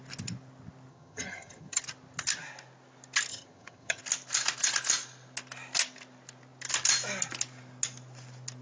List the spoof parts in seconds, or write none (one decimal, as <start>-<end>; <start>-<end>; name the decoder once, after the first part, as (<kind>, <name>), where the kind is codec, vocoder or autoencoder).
0.9-1.8 (vocoder, HiFi-GAN); 3.3-4.0